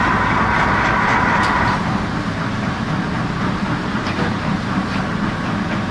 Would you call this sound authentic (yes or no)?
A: no